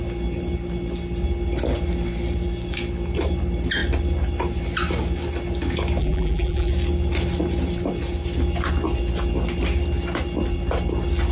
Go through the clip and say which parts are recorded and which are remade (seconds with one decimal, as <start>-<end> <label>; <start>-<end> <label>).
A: 0.0-6.0 recorded; 6.0-6.7 remade; 6.7-11.3 recorded